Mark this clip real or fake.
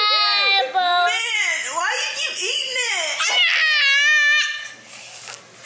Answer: real